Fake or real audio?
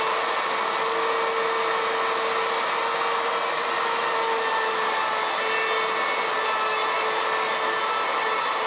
real